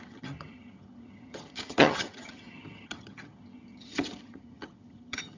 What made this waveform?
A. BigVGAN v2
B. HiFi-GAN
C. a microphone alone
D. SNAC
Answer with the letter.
B